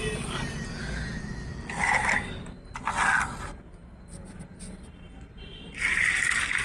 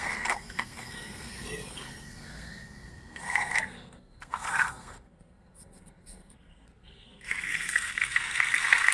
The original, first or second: first